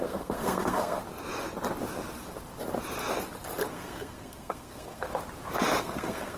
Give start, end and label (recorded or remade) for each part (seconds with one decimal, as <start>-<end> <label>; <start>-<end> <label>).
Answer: 0.0-1.0 remade; 1.0-3.7 recorded; 3.7-5.1 remade; 5.1-5.8 recorded; 5.8-6.4 remade